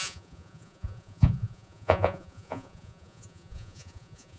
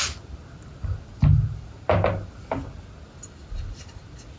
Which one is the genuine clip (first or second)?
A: second